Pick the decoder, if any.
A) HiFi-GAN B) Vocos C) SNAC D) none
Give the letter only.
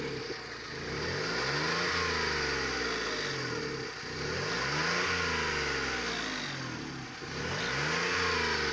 D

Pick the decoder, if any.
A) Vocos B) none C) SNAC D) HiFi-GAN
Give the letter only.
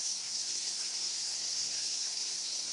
C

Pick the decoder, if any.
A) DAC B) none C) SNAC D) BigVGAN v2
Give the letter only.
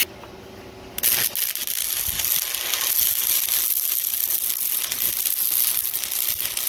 B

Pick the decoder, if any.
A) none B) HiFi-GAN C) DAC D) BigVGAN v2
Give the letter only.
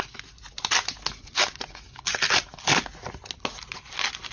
A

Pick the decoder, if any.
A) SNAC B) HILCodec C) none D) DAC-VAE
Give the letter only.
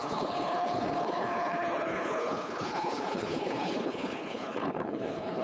B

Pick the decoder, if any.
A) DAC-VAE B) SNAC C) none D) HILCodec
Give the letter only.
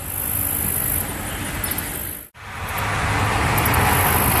C